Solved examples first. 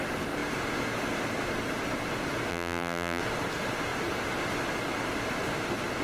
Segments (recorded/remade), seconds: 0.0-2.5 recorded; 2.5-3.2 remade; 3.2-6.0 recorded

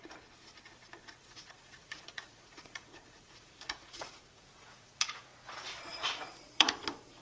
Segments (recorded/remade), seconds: 0.0-1.2 recorded; 1.2-5.5 remade; 5.5-5.9 recorded; 5.9-6.7 remade; 6.7-7.2 recorded

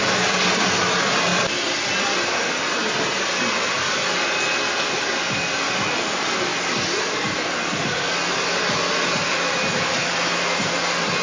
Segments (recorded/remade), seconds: 0.0-11.2 recorded

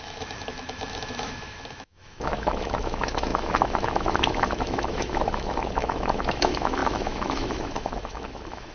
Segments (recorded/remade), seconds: 0.0-8.7 remade

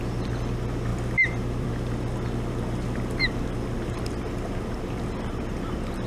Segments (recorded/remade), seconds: 0.0-6.1 recorded